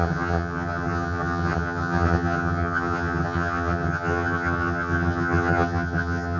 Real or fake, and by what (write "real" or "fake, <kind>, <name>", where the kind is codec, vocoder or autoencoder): fake, vocoder, HiFi-GAN